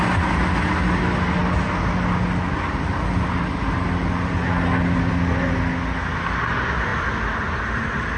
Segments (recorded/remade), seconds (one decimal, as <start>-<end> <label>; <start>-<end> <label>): 0.0-8.2 recorded